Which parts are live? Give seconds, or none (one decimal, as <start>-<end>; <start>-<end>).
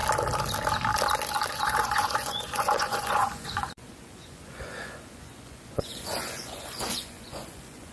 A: 0.0-1.5